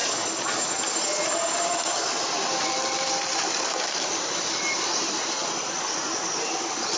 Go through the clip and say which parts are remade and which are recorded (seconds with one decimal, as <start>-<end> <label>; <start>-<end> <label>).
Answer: 0.0-7.0 recorded